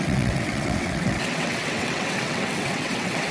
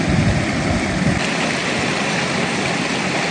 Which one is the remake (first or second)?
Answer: first